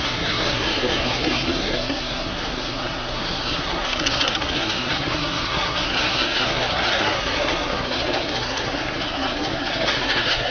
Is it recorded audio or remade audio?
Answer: remade